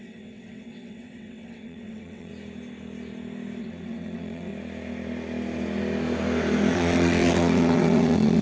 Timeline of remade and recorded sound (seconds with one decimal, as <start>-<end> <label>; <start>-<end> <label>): 0.0-2.3 remade; 2.3-3.6 recorded; 3.6-4.5 remade; 4.5-6.7 recorded; 6.7-8.4 remade

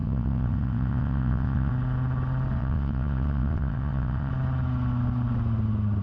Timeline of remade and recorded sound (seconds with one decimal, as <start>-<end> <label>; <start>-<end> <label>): 0.0-1.7 remade; 1.7-2.6 recorded; 2.6-4.3 remade; 4.3-6.0 recorded